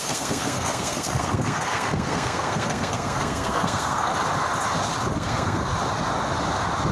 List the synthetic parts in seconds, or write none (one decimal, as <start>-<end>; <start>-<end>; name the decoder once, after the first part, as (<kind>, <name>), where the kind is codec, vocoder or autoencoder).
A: 0.0-4.1 (codec, SNAC); 5.1-5.7